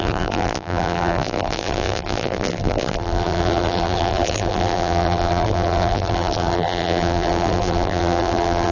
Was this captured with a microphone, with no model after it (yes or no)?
no